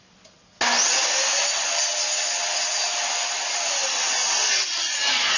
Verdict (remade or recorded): recorded